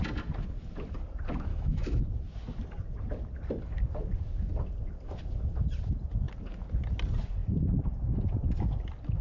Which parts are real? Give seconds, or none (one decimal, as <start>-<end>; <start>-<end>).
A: 0.0-1.5; 2.0-9.2